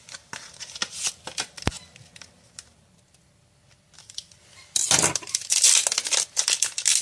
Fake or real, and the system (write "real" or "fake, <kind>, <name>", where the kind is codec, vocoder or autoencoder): real